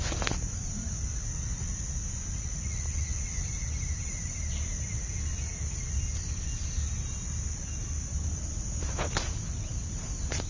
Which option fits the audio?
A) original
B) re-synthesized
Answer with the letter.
A